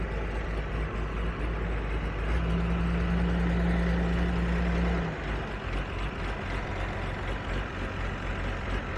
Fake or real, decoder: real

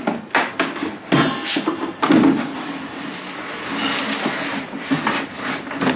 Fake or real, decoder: real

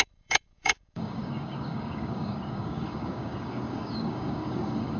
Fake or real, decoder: fake, codec, DAC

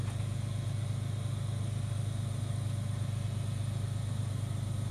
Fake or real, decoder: real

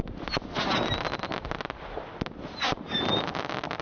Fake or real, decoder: real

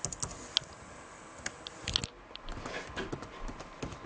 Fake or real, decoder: real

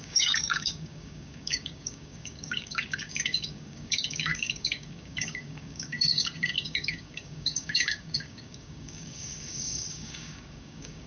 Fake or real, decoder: fake, codec, DAC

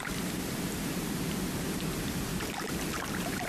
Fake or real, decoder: real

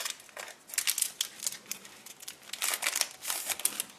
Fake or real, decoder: real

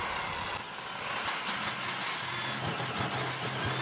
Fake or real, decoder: real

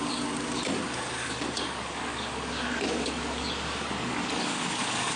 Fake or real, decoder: fake, codec, DAC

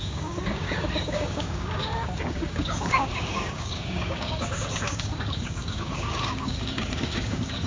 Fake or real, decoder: fake, codec, DAC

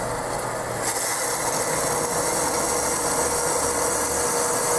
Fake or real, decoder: real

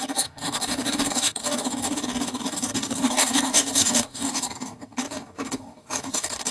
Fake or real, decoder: fake, codec, DAC